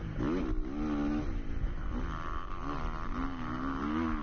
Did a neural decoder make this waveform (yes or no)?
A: no